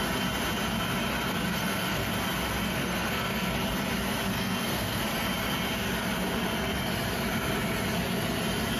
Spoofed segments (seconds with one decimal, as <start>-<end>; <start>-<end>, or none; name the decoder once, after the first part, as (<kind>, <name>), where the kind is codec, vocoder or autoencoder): 1.5-2.1 (codec, SNAC); 2.7-3.5; 4.3-5.0

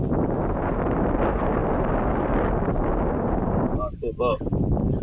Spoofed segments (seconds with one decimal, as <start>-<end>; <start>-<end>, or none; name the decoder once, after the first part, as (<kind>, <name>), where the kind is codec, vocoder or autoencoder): none

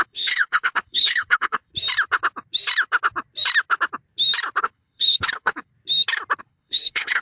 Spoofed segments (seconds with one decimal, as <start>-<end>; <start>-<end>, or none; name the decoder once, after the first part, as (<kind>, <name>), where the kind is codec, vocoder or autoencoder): 0.0-1.7 (codec, HILCodec); 4.6-5.7; 6.4-7.2

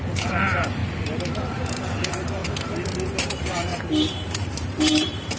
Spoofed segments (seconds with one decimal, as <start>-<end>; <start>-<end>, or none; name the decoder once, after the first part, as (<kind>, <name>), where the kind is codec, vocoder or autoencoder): 0.0-0.8 (vocoder, BigVGAN v2); 1.4-2.4; 3.2-3.7; 4.3-5.4

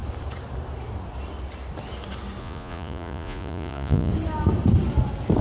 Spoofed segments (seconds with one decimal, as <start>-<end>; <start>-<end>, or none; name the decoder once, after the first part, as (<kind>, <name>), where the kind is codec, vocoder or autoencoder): 2.4-4.1 (vocoder, Vocos)

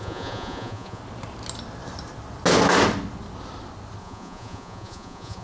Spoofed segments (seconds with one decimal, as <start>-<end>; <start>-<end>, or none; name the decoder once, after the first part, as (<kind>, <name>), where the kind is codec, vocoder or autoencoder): 0.0-1.0 (vocoder, Vocos); 4.0-5.4

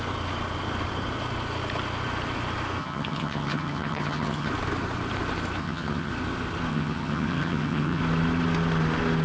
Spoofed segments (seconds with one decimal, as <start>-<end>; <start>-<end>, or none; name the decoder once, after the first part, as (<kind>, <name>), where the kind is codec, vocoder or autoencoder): 2.8-4.5 (vocoder, HiFi-GAN); 5.6-6.1; 6.7-8.0